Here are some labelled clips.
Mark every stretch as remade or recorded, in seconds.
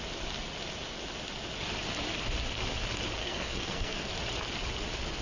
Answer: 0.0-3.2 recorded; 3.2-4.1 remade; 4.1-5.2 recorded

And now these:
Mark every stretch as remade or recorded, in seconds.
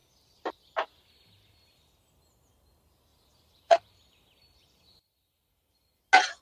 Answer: 0.0-3.1 recorded; 3.1-6.0 remade; 6.0-6.4 recorded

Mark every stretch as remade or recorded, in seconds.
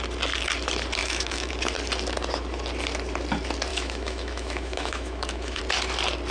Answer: 0.0-1.0 recorded; 1.0-1.5 remade; 1.5-3.7 recorded; 3.7-5.6 remade; 5.6-6.3 recorded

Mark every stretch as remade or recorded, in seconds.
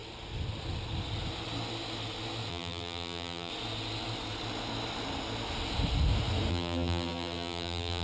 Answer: 0.0-2.5 recorded; 2.5-3.5 remade; 3.5-6.5 recorded; 6.5-8.0 remade